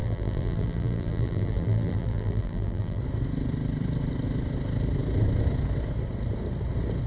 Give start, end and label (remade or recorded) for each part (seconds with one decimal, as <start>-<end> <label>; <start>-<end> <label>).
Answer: 0.0-3.0 remade; 3.0-7.1 recorded

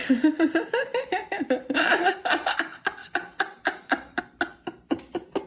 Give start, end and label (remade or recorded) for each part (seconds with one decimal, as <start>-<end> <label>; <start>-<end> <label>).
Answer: 0.0-3.0 recorded; 3.0-4.2 remade; 4.2-5.5 recorded

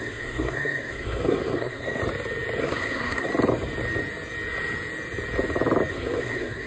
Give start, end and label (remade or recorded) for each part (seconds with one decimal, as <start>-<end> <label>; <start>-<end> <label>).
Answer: 0.0-2.0 remade; 2.0-2.6 recorded; 2.6-3.3 remade; 3.3-5.9 recorded; 5.9-6.7 remade